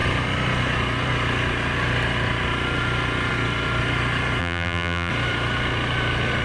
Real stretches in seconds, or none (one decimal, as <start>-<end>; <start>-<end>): 0.0-4.4; 5.1-6.4